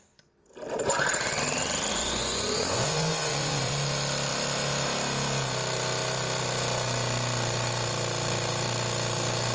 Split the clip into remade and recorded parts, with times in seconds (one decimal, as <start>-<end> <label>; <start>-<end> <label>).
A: 0.0-1.9 recorded; 1.9-3.7 remade; 3.7-9.5 recorded